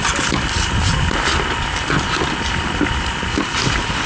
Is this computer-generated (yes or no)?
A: no